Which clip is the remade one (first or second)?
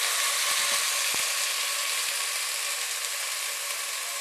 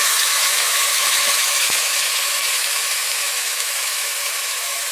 second